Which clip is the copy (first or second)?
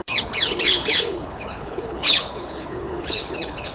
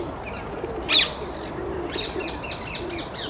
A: first